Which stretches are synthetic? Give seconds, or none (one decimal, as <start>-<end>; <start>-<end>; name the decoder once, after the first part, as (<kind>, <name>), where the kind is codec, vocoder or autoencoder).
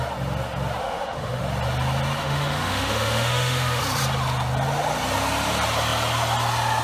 0.8-1.4 (autoencoder, DAC-VAE); 2.2-3.8